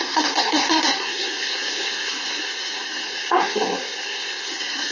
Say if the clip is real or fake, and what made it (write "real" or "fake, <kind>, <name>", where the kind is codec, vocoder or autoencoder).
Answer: fake, codec, SNAC